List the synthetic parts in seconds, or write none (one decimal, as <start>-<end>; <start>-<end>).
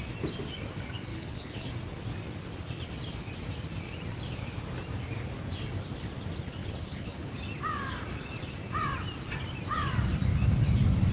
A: 1.1-1.7; 6.6-7.3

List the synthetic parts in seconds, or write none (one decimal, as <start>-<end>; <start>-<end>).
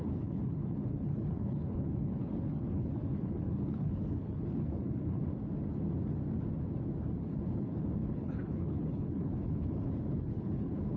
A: 0.0-5.2; 7.2-11.0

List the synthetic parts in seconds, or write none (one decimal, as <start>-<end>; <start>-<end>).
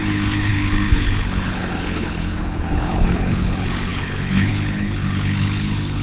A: 0.0-6.0